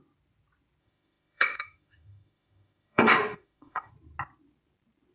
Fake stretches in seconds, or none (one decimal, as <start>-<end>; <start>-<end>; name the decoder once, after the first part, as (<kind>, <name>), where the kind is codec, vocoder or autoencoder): 0.8-3.9 (autoencoder, DAC-VAE)